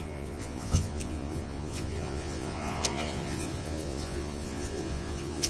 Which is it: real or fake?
fake